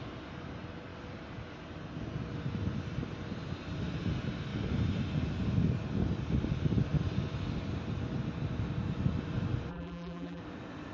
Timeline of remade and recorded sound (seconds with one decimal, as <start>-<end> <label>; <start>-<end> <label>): 0.0-9.7 recorded; 9.7-10.4 remade; 10.4-10.9 recorded